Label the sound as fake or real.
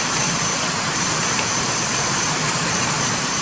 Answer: fake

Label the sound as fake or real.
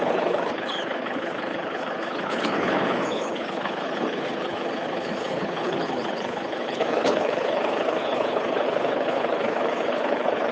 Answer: fake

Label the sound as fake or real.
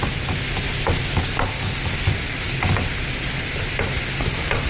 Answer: real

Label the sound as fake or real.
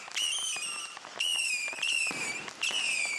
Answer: real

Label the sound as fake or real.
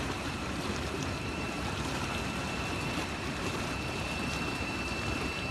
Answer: fake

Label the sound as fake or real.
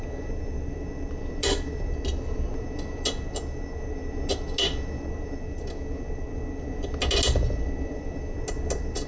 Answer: real